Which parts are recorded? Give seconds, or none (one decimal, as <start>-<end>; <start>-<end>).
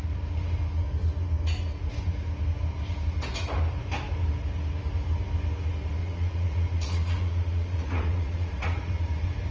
0.0-6.0; 9.1-9.5